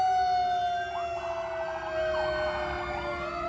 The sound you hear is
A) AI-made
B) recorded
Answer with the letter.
B